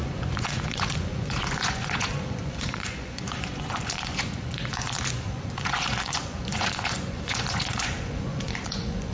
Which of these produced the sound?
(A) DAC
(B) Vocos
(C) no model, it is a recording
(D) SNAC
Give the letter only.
B